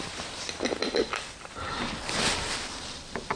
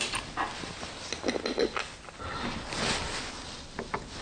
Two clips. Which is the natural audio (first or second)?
second